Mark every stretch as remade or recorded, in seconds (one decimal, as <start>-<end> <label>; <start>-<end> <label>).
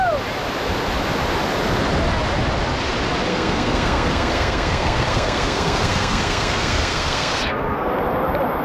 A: 0.0-3.3 recorded; 3.3-7.9 remade; 7.9-8.6 recorded